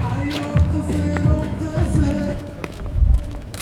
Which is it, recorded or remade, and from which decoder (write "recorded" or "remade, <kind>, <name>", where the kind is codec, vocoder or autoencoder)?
remade, autoencoder, DAC-VAE